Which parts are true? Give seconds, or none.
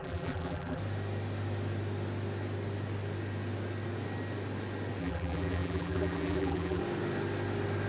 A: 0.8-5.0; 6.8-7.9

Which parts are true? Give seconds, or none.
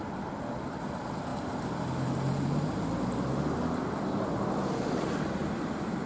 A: 0.0-6.1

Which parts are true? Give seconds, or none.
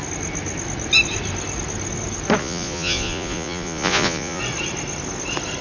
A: 0.0-2.4; 4.4-5.6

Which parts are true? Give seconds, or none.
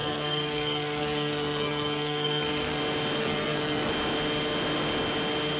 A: 2.8-3.2; 3.9-5.6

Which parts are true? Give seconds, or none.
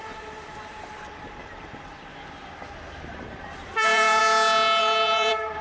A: 2.1-3.1; 4.2-4.8